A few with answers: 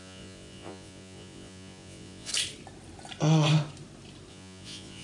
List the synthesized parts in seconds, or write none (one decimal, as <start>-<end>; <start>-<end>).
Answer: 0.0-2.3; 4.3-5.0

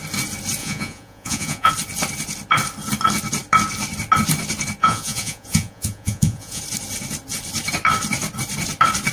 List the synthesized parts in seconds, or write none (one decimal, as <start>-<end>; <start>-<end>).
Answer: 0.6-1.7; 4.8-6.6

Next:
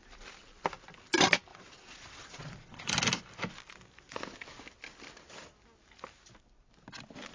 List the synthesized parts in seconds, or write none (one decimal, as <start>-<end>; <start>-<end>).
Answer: 1.5-2.9

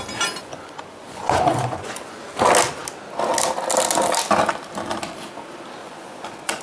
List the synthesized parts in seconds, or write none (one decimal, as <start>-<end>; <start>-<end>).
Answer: 0.4-2.2; 5.8-6.6

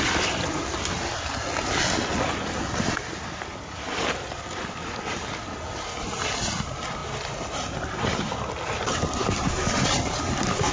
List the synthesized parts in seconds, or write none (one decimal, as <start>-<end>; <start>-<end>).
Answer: none